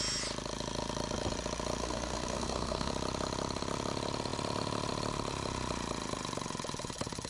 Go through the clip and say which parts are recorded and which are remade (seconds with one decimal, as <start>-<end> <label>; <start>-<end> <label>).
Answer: 0.0-1.8 recorded; 1.8-2.9 remade; 2.9-7.3 recorded